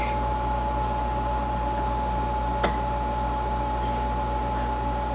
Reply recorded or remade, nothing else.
recorded